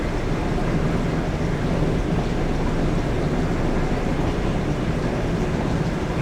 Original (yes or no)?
yes